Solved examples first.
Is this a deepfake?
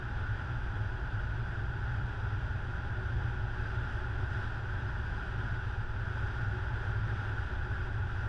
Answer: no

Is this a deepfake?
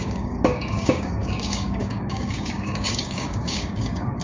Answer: yes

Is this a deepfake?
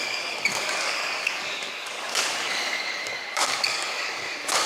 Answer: yes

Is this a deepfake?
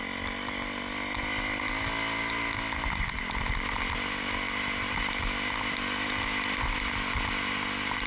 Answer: no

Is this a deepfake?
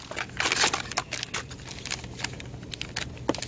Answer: no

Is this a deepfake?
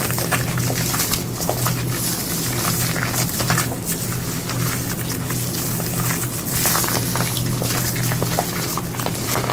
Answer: no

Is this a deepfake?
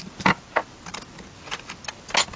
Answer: no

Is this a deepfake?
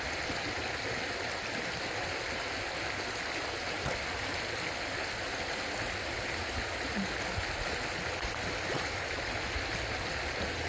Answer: no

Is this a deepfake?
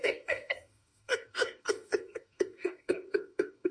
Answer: yes